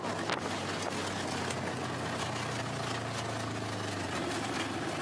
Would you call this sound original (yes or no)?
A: yes